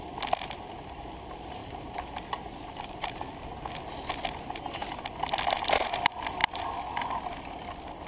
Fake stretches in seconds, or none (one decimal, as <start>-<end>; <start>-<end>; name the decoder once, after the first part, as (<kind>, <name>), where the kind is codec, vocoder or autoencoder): none